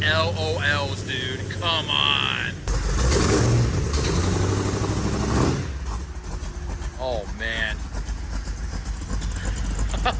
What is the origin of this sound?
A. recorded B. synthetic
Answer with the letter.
A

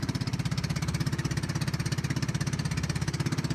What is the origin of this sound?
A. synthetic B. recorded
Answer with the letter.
A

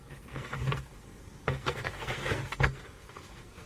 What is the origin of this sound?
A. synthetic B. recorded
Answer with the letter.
A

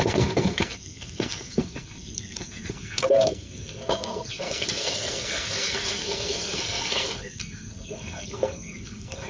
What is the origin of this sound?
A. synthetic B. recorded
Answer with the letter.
A